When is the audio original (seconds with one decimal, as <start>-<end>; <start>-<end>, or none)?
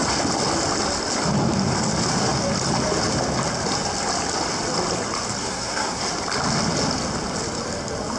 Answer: 0.0-5.4; 6.0-8.2